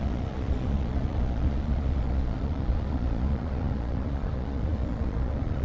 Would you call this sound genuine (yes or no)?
no